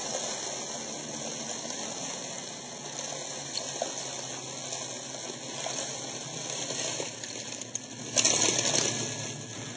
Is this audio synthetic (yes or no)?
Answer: no